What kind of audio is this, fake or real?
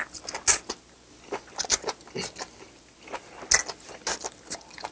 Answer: real